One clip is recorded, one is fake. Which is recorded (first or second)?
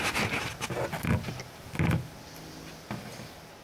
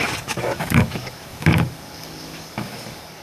first